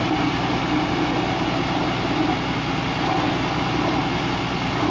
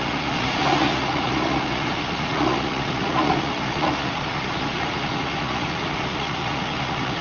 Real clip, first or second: first